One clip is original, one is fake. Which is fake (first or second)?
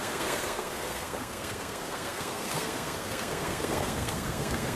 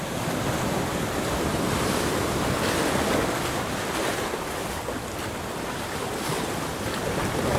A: first